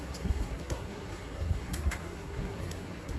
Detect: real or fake fake